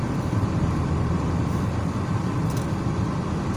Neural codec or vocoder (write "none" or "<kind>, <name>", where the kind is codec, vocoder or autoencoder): vocoder, BigVGAN v2